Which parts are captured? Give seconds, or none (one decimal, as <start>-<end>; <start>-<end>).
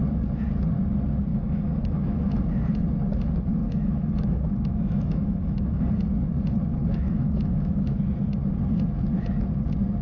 0.0-1.3; 2.4-3.6; 5.9-6.8; 8.0-10.0